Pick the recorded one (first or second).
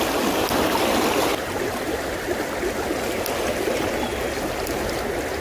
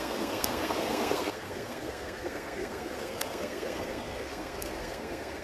first